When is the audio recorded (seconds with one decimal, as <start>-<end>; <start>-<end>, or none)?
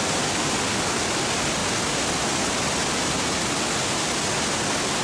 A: 0.0-5.0